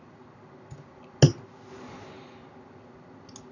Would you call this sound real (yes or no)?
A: yes